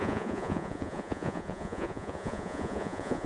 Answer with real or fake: fake